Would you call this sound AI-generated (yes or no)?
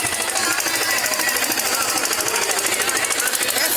no